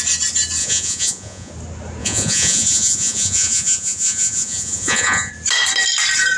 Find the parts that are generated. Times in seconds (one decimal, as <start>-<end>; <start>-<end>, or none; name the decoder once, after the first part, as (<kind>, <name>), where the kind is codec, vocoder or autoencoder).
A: 0.6-1.5 (vocoder, Vocos); 2.0-5.3